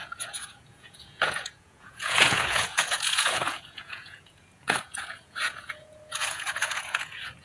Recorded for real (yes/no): no